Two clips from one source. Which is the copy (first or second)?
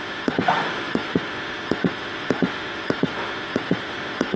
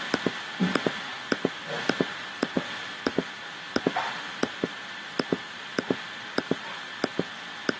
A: first